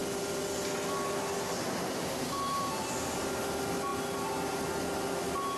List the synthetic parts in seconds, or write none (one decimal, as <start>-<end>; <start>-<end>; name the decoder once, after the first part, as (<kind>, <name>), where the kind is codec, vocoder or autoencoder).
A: none